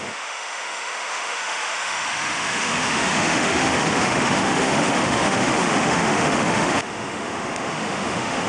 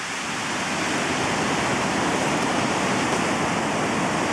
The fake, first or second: first